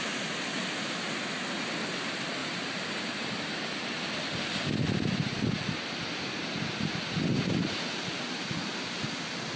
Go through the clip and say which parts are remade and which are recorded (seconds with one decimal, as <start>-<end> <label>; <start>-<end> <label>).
0.0-2.4 recorded; 2.4-3.6 remade; 3.6-9.6 recorded